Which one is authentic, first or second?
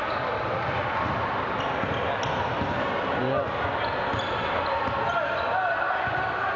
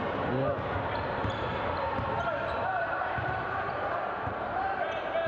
first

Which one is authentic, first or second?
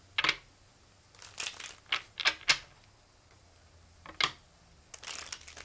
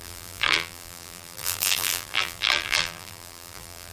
first